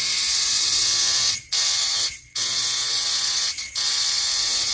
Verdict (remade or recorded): remade